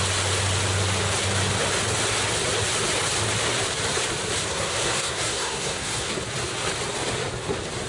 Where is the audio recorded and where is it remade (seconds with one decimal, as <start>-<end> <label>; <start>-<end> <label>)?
0.0-4.4 recorded; 4.4-6.1 remade; 6.1-7.9 recorded